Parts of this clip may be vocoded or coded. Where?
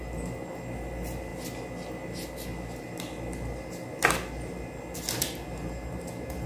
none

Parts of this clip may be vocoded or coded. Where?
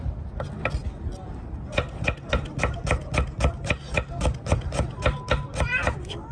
none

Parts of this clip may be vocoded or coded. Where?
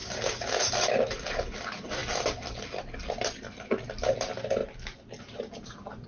none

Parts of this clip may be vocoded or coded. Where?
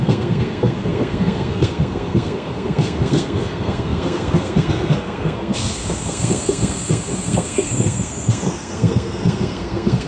0.0-10.1 (codec, SNAC)